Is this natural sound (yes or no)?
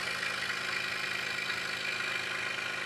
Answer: yes